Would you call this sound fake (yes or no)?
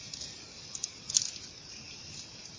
no